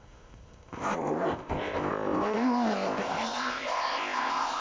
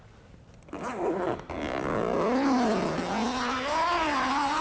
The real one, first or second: second